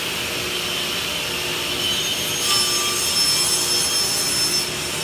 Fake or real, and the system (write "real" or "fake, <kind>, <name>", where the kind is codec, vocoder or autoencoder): real